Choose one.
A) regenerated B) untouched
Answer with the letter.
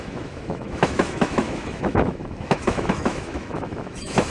A